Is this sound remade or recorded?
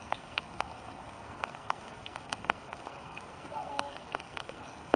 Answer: remade